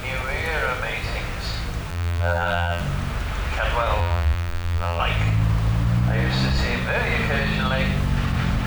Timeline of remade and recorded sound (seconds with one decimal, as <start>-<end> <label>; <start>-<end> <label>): 0.0-1.9 recorded; 1.9-2.8 remade; 2.8-4.0 recorded; 4.0-5.0 remade; 5.0-8.7 recorded